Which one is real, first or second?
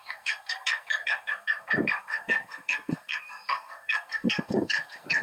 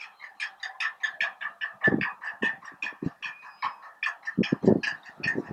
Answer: second